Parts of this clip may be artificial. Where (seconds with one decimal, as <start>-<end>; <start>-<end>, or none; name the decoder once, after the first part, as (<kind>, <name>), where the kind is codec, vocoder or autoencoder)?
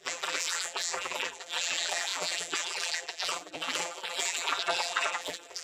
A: 0.0-5.6 (vocoder, BigVGAN v2)